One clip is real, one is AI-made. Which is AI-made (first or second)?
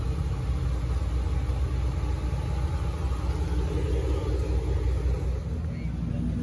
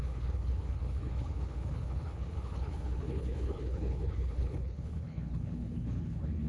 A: second